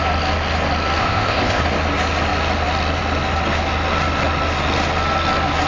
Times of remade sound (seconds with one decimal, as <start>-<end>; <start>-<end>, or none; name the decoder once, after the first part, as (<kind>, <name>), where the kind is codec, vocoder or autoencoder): 1.0-1.6 (codec, ZipCodec)